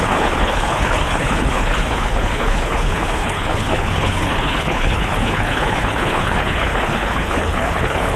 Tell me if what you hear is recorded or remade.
remade